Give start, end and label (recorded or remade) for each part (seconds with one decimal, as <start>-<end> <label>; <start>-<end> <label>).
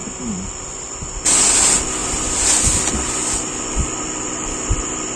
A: 0.0-5.2 recorded